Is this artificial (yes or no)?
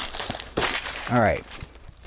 yes